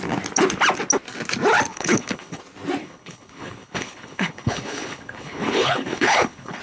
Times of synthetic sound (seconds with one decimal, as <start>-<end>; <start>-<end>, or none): 1.7-2.4; 2.8-6.6